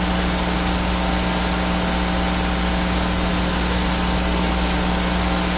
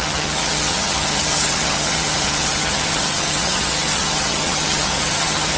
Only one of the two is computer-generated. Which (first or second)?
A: second